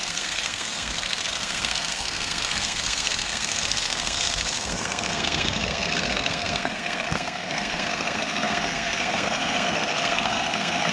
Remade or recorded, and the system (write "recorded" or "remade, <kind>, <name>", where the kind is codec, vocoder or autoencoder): remade, codec, SNAC